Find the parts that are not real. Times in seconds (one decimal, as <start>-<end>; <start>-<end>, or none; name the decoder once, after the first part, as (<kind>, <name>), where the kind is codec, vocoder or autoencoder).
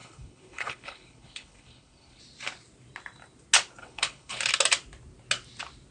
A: 0.0-2.2 (codec, HILCodec); 3.8-4.4